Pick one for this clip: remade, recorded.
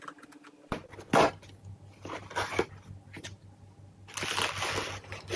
recorded